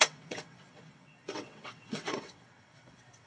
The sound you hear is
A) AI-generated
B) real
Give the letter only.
A